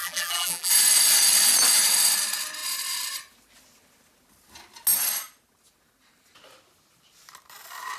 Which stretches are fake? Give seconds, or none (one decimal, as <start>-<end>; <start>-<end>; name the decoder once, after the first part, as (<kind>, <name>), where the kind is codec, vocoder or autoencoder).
0.0-0.7 (vocoder, BigVGAN v2)